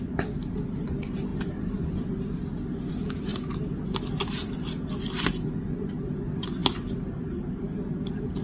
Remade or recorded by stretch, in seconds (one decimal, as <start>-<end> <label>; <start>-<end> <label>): 0.0-8.4 recorded